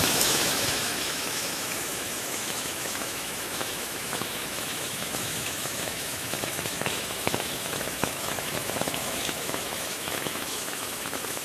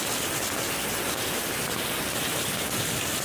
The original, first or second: second